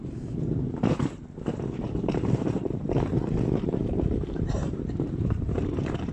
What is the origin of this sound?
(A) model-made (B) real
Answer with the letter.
A